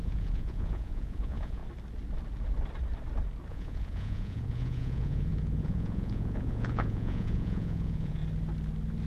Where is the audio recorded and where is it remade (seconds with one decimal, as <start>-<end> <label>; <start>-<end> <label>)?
0.0-1.6 remade; 1.6-3.5 recorded; 3.5-8.2 remade; 8.2-9.1 recorded